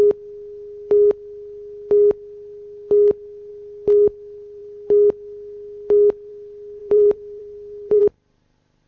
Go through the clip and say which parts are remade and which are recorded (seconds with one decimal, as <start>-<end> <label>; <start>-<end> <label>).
0.0-6.8 recorded; 6.8-8.0 remade; 8.0-8.9 recorded